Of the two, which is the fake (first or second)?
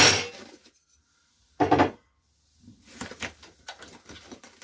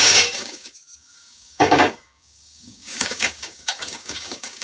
second